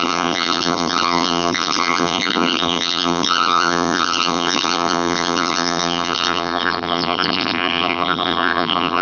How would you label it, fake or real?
fake